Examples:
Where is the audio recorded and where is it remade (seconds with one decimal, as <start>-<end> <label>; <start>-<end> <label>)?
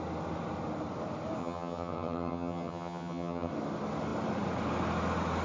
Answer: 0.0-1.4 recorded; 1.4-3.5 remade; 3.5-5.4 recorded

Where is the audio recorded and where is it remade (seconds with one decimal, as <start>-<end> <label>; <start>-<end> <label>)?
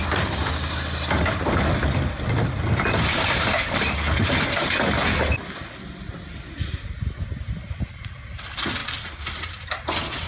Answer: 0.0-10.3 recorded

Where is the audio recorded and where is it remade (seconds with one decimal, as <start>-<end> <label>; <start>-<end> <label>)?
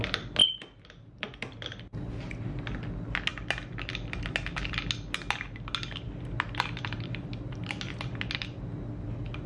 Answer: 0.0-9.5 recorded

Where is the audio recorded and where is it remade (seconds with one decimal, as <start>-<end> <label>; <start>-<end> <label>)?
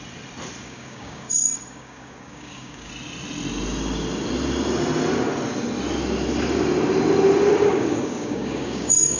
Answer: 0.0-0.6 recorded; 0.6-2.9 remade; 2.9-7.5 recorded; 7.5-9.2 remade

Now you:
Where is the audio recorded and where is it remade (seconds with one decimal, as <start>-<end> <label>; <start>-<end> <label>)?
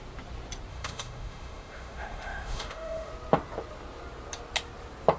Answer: 0.0-0.7 recorded; 0.7-3.1 remade; 3.1-5.2 recorded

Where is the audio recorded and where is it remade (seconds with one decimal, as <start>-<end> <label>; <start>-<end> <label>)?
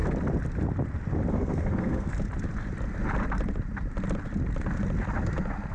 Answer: 0.0-1.3 recorded; 1.3-2.1 remade; 2.1-5.7 recorded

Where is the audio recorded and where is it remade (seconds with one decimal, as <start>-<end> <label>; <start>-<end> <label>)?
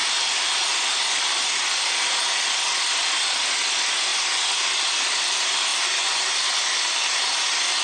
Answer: 0.0-7.8 recorded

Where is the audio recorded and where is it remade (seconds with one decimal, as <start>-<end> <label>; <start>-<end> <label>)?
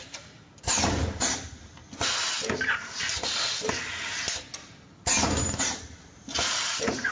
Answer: 0.0-1.8 remade; 1.8-5.6 recorded; 5.6-7.1 remade